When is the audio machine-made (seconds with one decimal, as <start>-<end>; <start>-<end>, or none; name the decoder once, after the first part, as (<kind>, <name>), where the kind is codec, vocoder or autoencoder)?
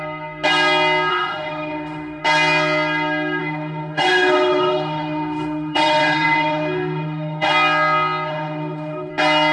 1.1-2.2 (autoencoder, DAC-VAE); 3.4-7.5; 8.3-9.1